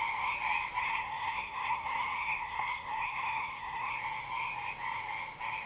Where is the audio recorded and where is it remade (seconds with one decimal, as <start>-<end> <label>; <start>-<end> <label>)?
0.0-0.8 recorded; 0.8-3.9 remade; 3.9-5.7 recorded

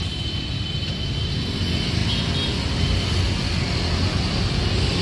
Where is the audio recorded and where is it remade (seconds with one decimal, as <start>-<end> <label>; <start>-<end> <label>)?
0.0-5.0 recorded